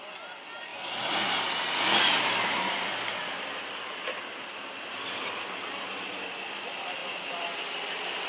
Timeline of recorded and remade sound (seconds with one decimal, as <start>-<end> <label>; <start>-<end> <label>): 0.0-8.3 recorded